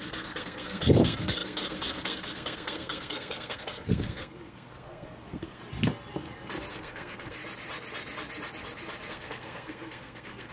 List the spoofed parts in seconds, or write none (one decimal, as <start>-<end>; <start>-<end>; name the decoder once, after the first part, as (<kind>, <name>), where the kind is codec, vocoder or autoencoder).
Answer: 0.0-5.6 (codec, SNAC); 6.7-7.4; 9.1-10.5